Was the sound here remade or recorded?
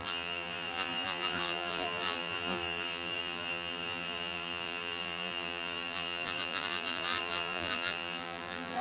remade